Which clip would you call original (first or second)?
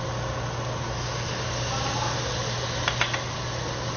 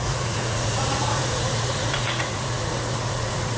first